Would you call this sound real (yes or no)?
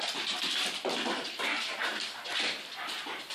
yes